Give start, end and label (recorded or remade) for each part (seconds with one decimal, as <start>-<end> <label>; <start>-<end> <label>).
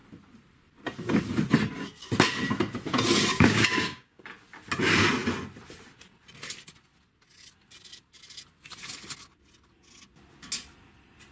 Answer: 0.0-3.3 recorded; 3.3-4.2 remade; 4.2-11.3 recorded